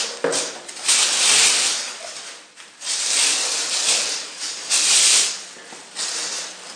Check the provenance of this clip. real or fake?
real